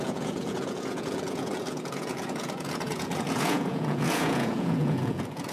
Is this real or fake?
fake